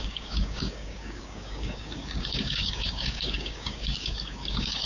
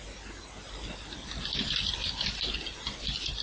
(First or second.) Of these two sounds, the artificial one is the first